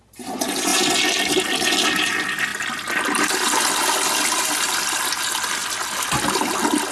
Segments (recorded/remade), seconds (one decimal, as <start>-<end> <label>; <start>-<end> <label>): 0.0-6.9 recorded